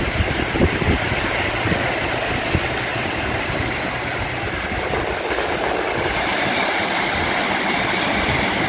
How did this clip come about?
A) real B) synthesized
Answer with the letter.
A